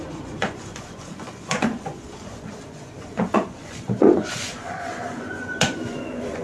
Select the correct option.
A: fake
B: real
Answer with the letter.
A